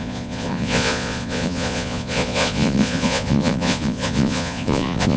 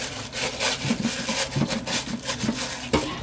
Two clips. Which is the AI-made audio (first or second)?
first